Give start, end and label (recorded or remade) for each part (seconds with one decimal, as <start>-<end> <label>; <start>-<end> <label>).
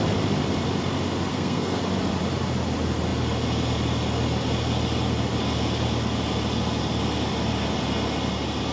0.0-1.3 recorded; 1.3-1.8 remade; 1.8-8.7 recorded